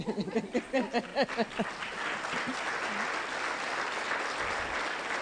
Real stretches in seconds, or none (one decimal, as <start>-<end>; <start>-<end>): 0.0-5.2